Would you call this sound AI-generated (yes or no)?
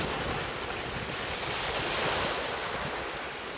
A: no